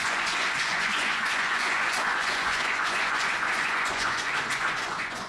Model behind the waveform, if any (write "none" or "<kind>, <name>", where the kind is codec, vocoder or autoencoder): vocoder, Vocos